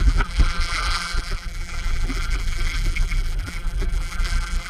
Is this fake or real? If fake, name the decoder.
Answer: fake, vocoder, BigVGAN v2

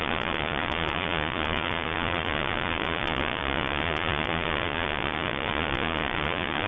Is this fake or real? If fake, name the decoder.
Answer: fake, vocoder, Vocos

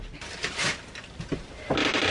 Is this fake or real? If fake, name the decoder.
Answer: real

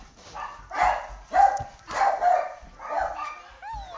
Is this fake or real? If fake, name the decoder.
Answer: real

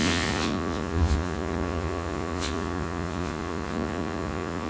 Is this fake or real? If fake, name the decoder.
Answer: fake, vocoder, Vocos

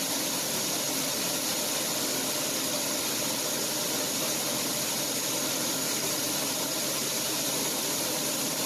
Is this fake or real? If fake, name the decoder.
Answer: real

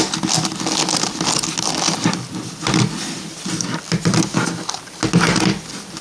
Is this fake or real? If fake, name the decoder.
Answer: real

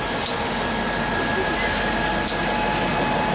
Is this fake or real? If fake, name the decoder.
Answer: real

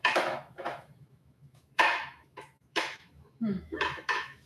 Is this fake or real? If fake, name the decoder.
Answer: fake, autoencoder, DAC-VAE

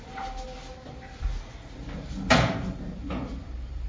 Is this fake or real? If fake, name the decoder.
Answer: real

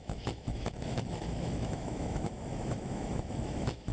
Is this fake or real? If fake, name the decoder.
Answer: fake, autoencoder, DAC-VAE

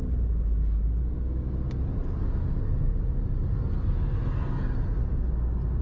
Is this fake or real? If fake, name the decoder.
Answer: real